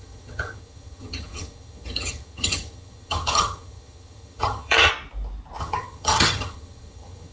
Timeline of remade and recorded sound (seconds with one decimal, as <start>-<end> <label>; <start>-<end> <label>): 0.0-4.9 remade; 4.9-5.6 recorded; 5.6-7.3 remade